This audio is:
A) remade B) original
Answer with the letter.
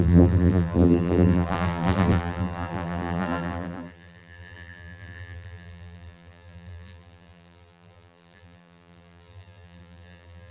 A